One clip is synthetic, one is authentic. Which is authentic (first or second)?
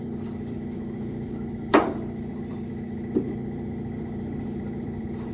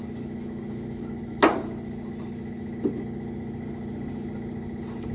second